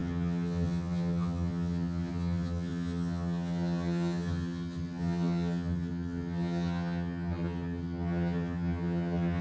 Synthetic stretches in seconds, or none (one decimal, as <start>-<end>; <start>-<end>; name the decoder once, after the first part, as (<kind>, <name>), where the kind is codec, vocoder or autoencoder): 0.0-9.4 (vocoder, HiFi-GAN)